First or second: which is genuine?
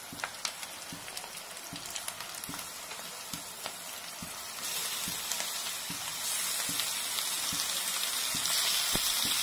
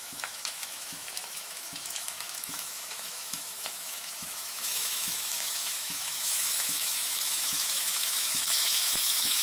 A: first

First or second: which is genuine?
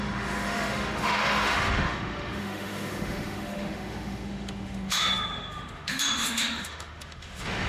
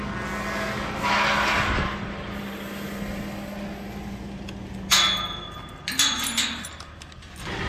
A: second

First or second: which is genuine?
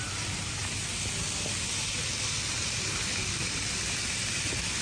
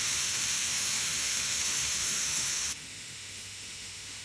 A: first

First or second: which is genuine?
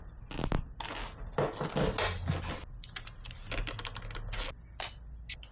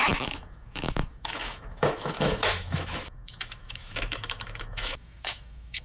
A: first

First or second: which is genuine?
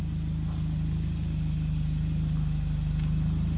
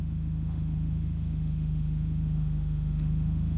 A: first